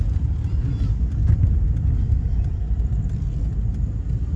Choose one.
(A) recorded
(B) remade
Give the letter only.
A